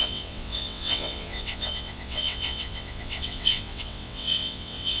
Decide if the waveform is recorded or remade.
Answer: remade